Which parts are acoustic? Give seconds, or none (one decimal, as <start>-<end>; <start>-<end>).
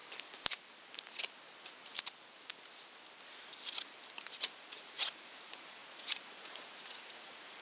0.0-4.4